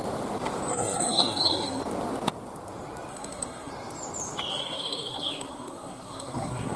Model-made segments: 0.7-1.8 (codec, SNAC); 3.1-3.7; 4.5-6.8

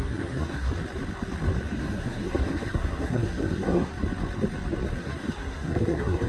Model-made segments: 0.0-0.7 (codec, SNAC); 1.8-3.9; 4.9-6.3